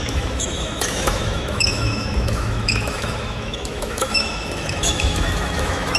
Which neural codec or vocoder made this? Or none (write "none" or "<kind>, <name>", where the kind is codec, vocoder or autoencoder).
autoencoder, DAC-VAE